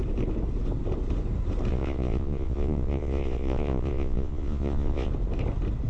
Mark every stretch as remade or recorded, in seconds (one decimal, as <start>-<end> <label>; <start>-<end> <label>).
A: 0.0-1.7 recorded; 1.7-5.1 remade; 5.1-5.9 recorded